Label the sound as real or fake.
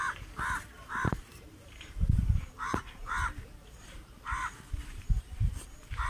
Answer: fake